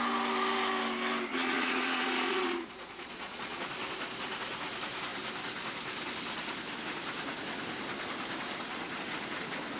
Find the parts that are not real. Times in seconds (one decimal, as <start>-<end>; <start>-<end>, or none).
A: 1.3-3.7